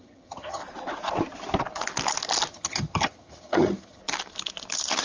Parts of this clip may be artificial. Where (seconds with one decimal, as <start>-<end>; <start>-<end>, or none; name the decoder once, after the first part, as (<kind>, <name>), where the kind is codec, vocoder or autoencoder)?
0.0-0.6 (vocoder, HiFi-GAN); 2.5-4.0